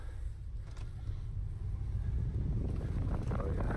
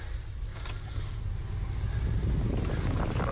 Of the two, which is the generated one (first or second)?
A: first